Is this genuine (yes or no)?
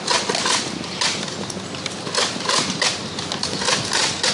yes